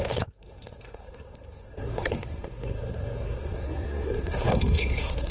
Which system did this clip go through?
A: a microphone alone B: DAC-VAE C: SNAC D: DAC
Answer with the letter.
C